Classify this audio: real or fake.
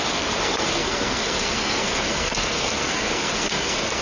fake